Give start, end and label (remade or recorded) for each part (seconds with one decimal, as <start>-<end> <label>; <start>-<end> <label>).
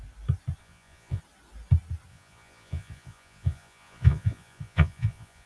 0.0-0.6 recorded; 0.6-1.2 remade; 1.2-2.1 recorded; 2.1-5.5 remade